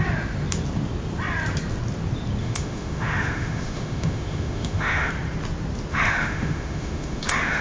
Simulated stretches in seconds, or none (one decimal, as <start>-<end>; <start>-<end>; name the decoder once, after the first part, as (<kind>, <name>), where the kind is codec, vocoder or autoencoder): 2.4-5.1 (autoencoder, DAC-VAE); 5.9-7.6